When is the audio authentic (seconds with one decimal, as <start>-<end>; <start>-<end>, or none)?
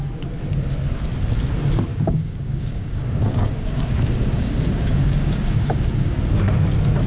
0.0-1.9; 6.2-7.1